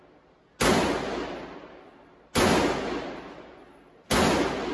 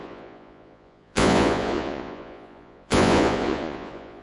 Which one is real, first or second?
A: first